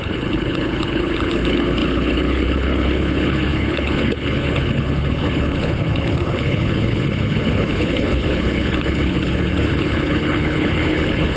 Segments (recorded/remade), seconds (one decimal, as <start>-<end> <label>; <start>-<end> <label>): 0.0-11.4 remade